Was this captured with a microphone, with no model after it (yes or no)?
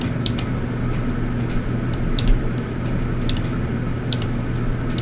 yes